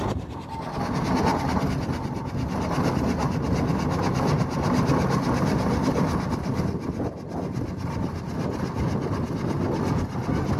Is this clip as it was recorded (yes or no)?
yes